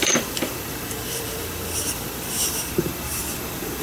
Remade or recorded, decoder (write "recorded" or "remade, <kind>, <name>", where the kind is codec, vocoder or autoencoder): remade, vocoder, BigVGAN v2